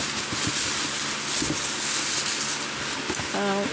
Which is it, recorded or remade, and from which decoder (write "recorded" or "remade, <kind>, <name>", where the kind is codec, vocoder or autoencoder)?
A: recorded